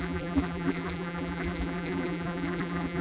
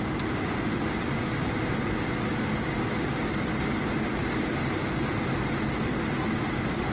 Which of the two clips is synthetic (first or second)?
first